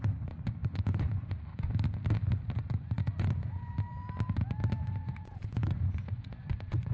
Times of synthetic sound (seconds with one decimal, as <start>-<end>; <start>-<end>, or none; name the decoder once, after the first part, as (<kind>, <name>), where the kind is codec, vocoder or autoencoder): 0.0-1.7 (vocoder, Vocos); 2.7-3.9; 4.8-6.9